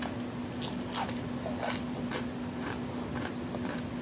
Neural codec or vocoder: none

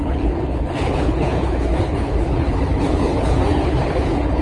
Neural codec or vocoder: codec, HILCodec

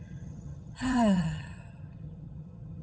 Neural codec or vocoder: vocoder, HiFi-GAN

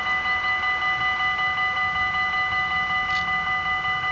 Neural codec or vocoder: none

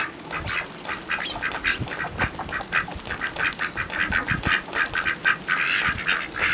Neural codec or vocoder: none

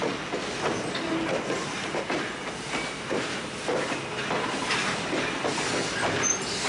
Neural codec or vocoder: none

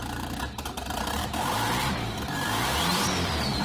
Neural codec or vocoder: vocoder, BigVGAN v2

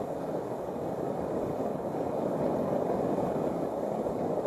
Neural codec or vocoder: codec, DAC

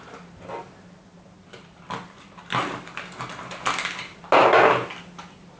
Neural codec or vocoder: none